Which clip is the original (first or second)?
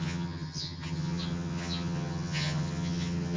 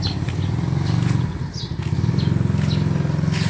second